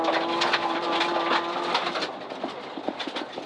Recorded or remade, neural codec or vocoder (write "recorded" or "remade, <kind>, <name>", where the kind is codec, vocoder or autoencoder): recorded